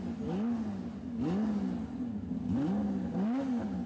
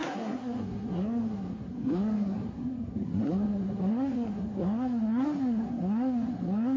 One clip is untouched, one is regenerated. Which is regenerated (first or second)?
second